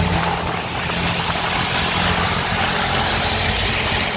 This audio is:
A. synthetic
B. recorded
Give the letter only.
B